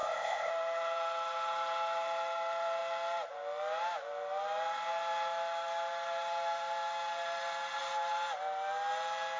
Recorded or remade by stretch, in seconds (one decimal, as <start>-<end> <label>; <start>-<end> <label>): 0.0-0.5 remade; 0.5-9.4 recorded